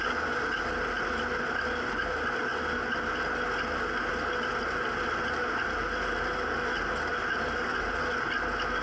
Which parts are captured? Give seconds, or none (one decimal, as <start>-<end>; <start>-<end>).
0.0-8.8